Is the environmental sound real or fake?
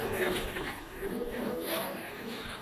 fake